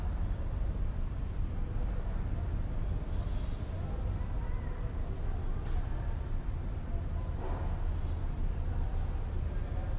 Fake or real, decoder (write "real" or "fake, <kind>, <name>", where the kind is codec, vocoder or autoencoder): real